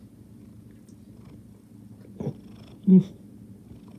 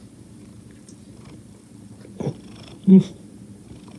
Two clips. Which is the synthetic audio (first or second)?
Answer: second